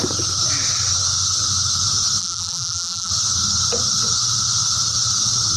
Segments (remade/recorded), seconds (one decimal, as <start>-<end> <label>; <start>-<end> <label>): 0.0-2.2 recorded; 2.2-3.1 remade; 3.1-5.6 recorded